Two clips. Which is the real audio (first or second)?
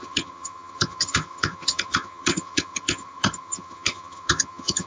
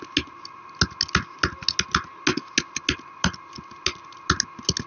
second